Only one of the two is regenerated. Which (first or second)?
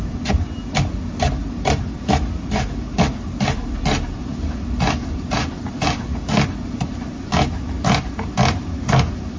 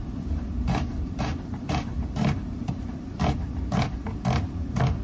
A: second